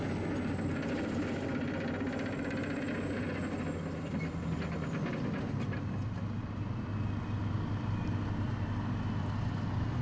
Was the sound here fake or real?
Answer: real